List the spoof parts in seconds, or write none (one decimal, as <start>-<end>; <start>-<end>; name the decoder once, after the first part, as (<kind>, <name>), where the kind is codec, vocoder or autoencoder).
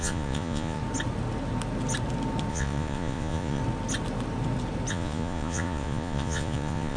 0.0-0.8 (vocoder, Vocos); 2.5-3.6; 4.9-7.0